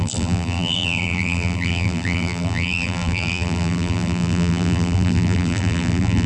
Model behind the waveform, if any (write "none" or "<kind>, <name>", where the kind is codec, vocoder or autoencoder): vocoder, BigVGAN v2